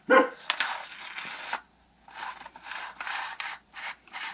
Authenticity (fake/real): real